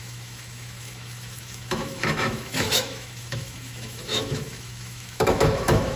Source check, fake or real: fake